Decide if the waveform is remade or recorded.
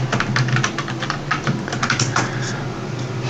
recorded